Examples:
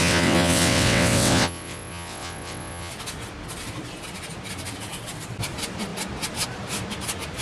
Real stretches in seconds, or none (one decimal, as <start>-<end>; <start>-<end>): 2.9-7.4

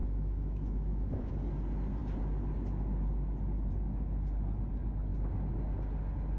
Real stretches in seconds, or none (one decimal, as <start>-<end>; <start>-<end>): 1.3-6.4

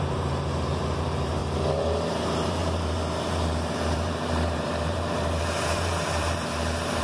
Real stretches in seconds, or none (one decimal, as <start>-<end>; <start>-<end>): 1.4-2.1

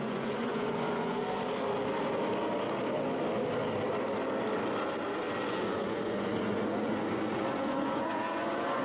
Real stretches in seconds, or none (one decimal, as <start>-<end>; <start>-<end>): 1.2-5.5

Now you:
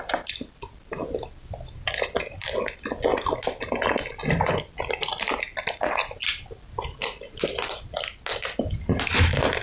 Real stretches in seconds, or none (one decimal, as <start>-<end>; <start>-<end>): 0.0-9.6

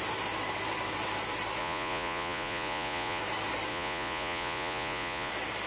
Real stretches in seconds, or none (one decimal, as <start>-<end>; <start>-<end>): 0.0-1.6; 3.2-3.7; 5.3-5.7